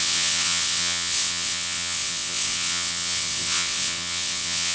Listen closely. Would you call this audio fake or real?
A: fake